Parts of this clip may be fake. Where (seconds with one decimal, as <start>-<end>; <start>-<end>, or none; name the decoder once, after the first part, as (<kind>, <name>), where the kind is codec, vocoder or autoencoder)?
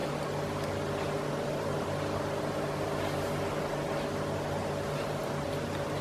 none